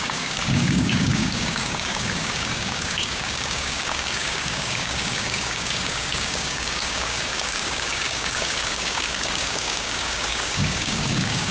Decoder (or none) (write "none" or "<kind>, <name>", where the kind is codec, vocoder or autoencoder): codec, DAC